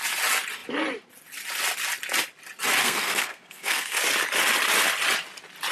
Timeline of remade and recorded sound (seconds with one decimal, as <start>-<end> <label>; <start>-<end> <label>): 0.0-2.8 recorded; 2.8-4.0 remade; 4.0-5.7 recorded